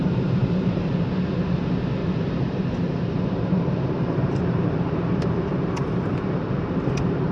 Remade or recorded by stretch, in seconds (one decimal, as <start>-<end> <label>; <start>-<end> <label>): 0.0-0.9 remade; 0.9-2.0 recorded; 2.0-6.4 remade; 6.4-7.3 recorded